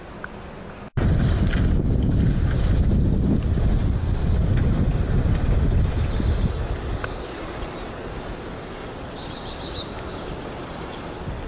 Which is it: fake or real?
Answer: real